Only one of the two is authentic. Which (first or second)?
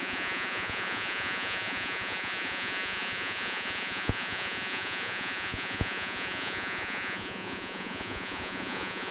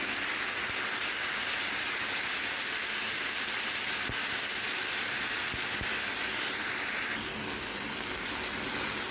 second